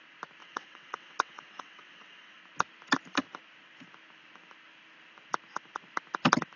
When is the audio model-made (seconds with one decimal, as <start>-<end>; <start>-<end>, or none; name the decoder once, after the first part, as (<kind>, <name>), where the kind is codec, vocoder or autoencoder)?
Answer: 0.4-2.4 (vocoder, WaveNeXt)